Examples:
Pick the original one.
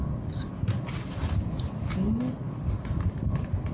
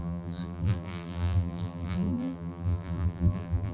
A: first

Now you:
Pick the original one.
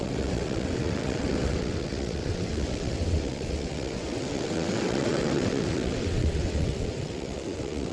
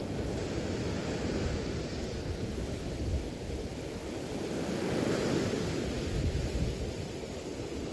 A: second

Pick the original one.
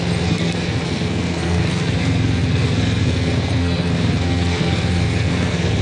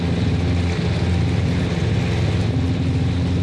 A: second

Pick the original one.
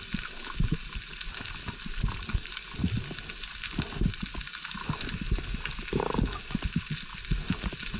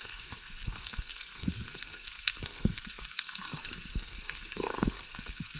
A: first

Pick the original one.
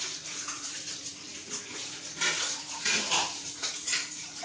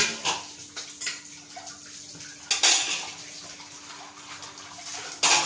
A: second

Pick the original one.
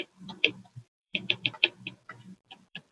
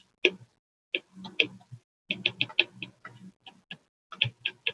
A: second